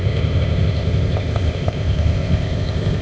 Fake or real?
fake